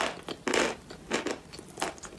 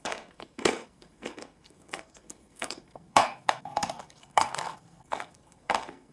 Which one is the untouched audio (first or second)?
first